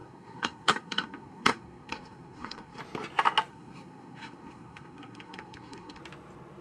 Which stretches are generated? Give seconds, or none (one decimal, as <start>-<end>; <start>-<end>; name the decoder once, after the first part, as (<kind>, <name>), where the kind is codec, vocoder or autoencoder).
0.0-2.8 (codec, SNAC); 3.5-6.0